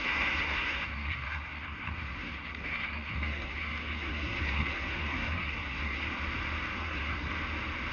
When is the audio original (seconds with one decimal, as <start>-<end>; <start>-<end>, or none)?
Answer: 6.0-6.8; 7.3-7.9